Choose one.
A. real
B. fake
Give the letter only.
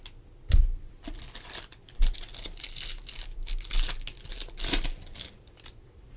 A